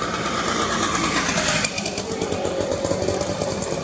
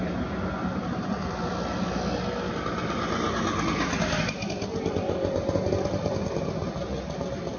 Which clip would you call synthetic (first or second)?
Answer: first